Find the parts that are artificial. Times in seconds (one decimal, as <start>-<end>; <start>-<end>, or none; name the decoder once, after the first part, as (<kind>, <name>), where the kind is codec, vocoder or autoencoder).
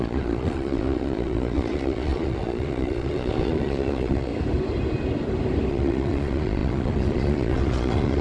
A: 0.0-4.3 (vocoder, Vocos); 5.7-8.2